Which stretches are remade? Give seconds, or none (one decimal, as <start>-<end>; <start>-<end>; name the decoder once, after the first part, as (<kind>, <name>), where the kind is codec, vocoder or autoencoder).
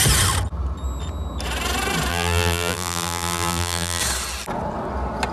2.1-4.0 (vocoder, BigVGAN v2)